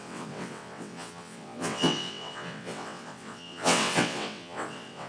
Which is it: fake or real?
fake